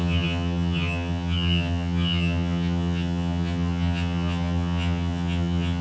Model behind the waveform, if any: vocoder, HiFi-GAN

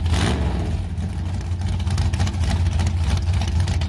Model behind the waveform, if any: none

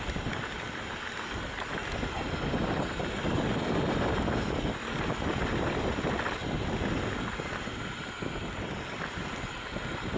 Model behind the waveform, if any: none